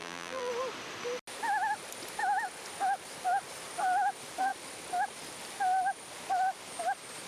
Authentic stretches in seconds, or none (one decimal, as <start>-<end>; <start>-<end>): 0.5-7.3